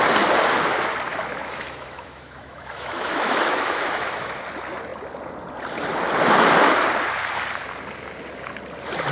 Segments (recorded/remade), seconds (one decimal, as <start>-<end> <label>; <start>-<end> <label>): 0.0-1.1 recorded; 1.1-4.4 remade; 4.4-9.1 recorded